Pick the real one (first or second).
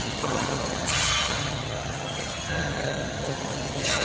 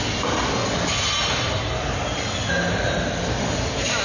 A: second